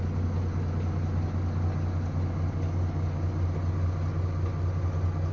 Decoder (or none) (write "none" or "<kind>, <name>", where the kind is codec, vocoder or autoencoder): none